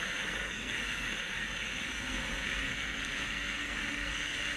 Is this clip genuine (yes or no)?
no